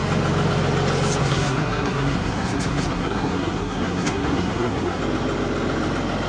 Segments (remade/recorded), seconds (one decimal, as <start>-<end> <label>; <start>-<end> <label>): 0.0-1.2 recorded; 1.2-5.0 remade; 5.0-6.3 recorded